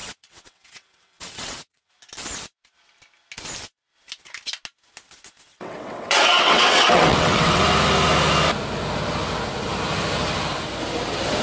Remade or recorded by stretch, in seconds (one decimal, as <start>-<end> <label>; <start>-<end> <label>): 0.0-1.9 remade; 1.9-5.5 recorded; 5.5-7.6 remade; 7.6-11.4 recorded